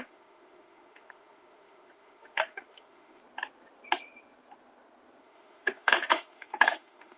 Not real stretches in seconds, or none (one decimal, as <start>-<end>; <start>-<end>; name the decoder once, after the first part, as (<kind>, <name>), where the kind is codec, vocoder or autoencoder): 0.0-3.2 (autoencoder, DAC-VAE); 5.2-7.2